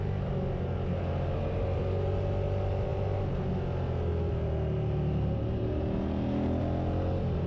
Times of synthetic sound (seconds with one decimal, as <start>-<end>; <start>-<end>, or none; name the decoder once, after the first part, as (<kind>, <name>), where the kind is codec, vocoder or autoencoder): none